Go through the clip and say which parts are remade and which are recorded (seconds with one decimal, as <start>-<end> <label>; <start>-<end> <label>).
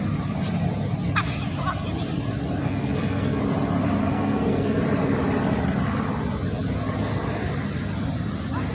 0.0-2.6 recorded; 2.6-3.4 remade; 3.4-4.0 recorded; 4.0-4.8 remade; 4.8-8.7 recorded